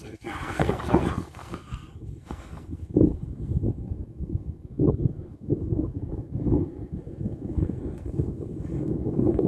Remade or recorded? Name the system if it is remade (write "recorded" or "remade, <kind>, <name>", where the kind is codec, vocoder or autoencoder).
remade, codec, SNAC